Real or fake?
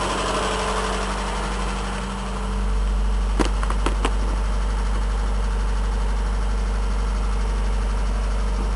real